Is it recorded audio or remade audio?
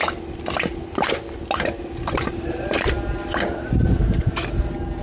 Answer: recorded